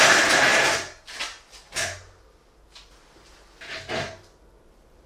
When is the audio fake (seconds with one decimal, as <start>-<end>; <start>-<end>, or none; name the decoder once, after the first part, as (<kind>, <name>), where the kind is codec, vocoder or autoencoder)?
0.0-0.5 (vocoder, BigVGAN v2); 3.6-5.1